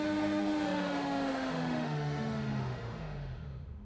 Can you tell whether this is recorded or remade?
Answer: remade